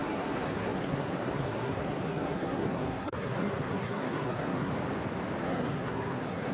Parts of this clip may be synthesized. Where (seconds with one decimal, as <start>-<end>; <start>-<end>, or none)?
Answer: 0.0-4.7; 5.4-6.5